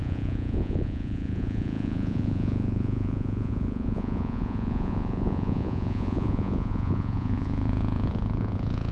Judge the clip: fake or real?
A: fake